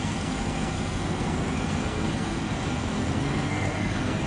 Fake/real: fake